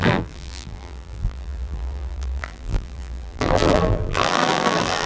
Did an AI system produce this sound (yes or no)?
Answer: yes